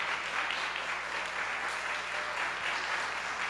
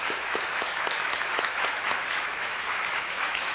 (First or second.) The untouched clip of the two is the first